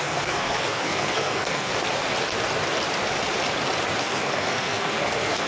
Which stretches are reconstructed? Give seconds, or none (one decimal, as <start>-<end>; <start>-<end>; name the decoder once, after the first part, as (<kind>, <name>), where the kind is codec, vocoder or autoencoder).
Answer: 0.0-1.7 (codec, SNAC); 4.0-5.5